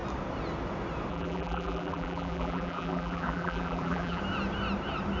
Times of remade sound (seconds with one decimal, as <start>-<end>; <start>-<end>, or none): 1.1-4.2